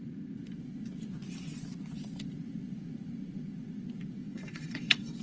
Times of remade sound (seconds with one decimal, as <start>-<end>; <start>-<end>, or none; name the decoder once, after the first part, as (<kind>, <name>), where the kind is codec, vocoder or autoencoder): 4.2-5.2 (vocoder, WaveNeXt)